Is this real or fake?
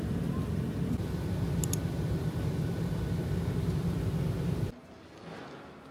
real